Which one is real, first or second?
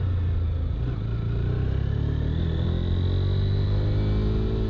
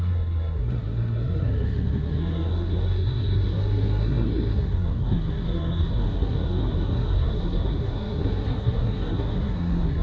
first